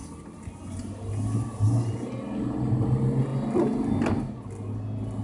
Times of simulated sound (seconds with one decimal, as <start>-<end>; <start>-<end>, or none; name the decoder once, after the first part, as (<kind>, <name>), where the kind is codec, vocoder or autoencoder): none